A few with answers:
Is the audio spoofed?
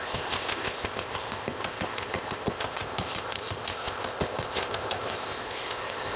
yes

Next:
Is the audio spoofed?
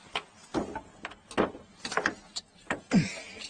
no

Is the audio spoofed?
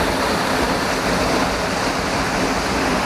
no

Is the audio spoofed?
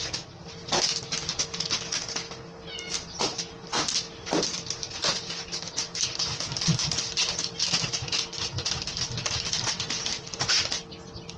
no